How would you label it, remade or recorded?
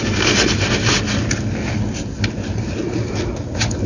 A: recorded